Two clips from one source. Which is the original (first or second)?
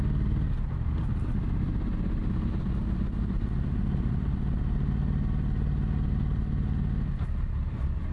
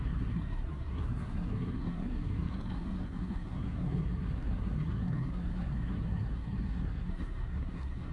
first